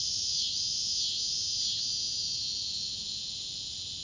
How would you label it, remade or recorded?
recorded